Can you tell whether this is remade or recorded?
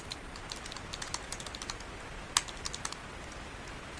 recorded